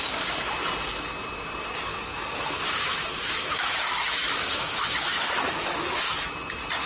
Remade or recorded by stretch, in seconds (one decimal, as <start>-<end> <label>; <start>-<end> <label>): 0.0-1.9 recorded; 1.9-6.0 remade; 6.0-6.9 recorded